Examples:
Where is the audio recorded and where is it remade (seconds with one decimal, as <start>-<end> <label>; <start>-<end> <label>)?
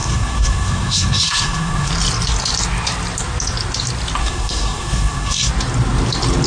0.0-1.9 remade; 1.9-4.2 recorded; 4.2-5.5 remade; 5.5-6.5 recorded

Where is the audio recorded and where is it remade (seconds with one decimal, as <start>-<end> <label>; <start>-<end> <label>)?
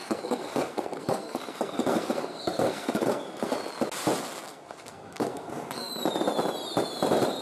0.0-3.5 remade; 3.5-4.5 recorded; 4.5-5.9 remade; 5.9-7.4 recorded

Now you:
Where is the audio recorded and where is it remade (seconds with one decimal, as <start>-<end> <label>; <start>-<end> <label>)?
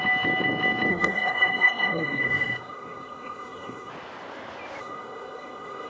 0.0-0.9 recorded; 0.9-3.9 remade; 3.9-4.8 recorded; 4.8-5.9 remade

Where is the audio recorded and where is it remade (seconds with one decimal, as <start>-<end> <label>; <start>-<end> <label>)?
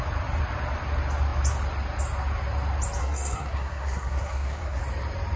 0.0-3.0 recorded; 3.0-4.8 remade; 4.8-5.4 recorded